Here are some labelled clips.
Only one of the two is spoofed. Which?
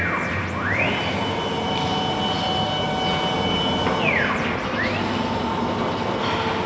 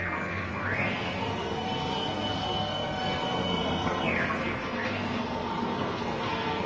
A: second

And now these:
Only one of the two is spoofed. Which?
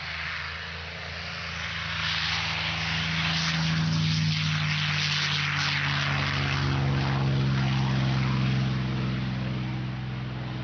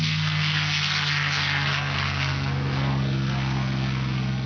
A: second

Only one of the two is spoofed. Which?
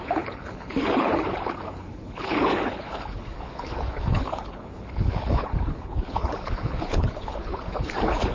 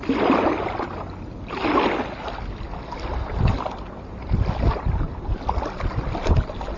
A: first